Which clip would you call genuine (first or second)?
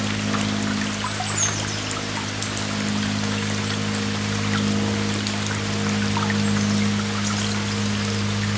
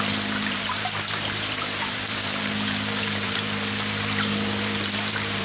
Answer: first